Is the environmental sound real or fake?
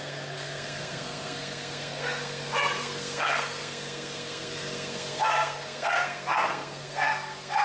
fake